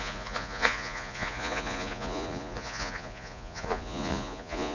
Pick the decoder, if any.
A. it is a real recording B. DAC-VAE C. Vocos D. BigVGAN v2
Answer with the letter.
C